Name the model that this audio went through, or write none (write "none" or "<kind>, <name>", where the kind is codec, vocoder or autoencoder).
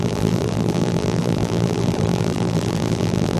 vocoder, BigVGAN v2